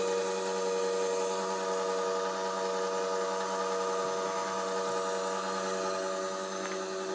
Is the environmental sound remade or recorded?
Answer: recorded